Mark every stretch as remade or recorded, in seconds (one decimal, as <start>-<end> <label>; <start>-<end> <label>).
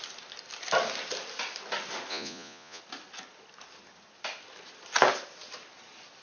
0.0-2.1 recorded; 2.1-2.8 remade; 2.8-6.2 recorded